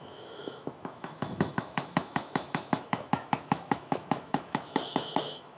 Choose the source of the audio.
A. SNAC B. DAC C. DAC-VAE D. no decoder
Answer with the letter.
C